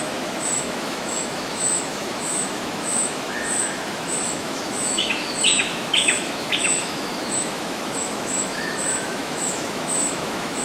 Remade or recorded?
remade